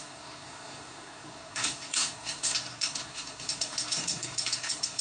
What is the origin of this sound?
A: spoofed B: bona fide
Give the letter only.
A